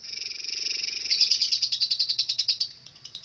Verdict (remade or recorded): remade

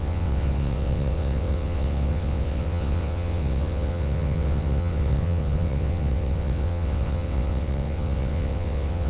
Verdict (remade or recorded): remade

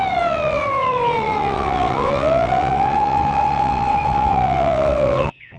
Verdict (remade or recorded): remade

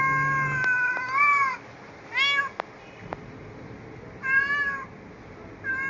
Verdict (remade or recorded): recorded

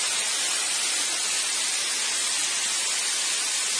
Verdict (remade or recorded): recorded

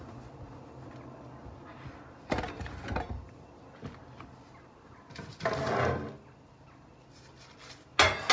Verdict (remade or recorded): recorded